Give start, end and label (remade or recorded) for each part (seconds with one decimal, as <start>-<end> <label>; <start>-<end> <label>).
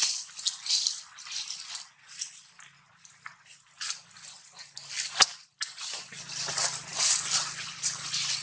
0.0-8.4 recorded